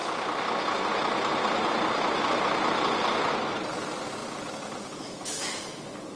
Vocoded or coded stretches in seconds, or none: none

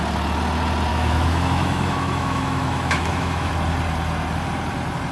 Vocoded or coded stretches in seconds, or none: 0.9-3.5